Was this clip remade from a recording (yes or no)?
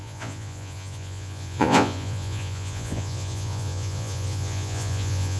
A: yes